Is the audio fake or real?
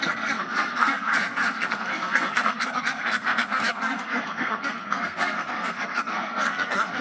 fake